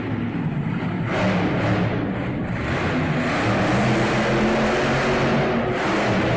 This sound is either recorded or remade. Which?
recorded